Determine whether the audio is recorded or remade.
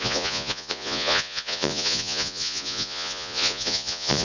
remade